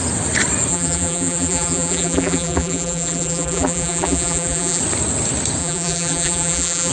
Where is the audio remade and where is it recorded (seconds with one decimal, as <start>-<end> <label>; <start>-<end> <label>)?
0.0-0.7 recorded; 0.7-4.8 remade; 4.8-5.6 recorded; 5.6-6.9 remade